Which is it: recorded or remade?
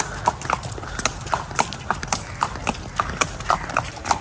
recorded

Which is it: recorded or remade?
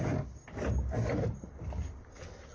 recorded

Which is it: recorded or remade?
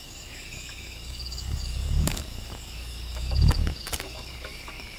remade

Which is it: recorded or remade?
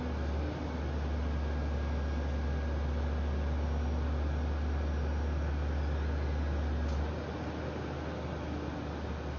recorded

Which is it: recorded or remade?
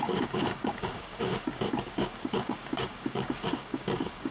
remade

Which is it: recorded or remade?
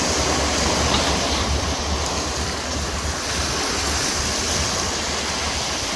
recorded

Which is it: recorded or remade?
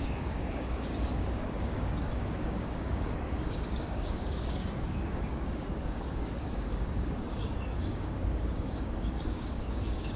remade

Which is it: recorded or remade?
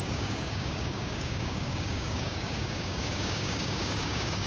remade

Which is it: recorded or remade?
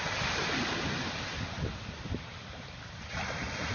recorded